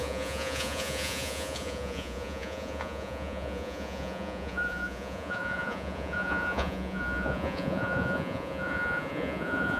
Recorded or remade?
remade